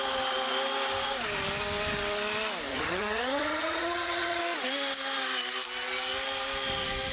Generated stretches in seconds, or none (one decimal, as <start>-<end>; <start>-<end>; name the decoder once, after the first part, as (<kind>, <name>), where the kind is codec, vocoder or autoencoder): 2.7-4.4 (vocoder, HiFi-GAN)